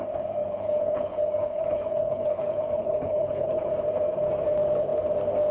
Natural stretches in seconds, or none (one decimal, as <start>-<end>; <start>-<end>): 0.0-0.4; 3.7-5.5